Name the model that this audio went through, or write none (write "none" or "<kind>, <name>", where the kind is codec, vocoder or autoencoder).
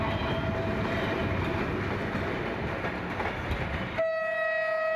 none